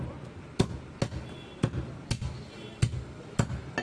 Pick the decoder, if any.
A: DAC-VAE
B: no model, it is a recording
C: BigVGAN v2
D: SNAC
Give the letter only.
B